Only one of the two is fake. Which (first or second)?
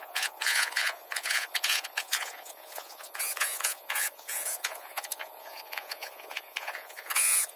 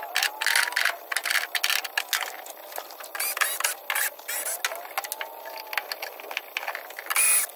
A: first